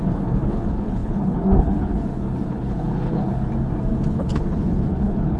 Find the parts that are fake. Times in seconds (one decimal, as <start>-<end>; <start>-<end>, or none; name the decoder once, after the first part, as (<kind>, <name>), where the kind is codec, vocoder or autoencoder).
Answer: 0.0-3.5 (codec, HILCodec); 4.1-5.4